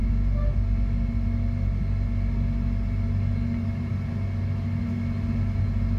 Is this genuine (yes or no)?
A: yes